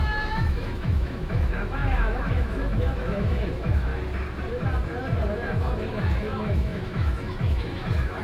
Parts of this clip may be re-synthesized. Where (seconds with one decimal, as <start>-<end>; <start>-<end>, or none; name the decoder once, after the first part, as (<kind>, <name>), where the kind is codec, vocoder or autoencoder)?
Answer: 0.0-3.9 (autoencoder, DAC-VAE); 5.3-8.2